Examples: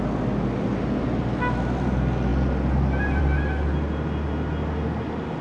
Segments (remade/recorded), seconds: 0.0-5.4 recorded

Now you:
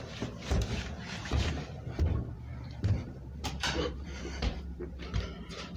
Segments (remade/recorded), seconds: 0.0-5.8 remade

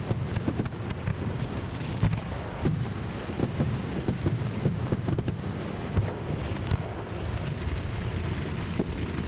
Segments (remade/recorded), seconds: 0.0-1.1 recorded; 1.1-2.6 remade; 2.6-3.4 recorded; 3.4-8.1 remade; 8.1-9.3 recorded

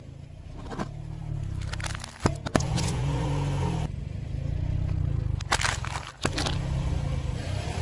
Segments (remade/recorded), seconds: 0.0-2.5 recorded; 2.5-3.3 remade; 3.3-7.8 recorded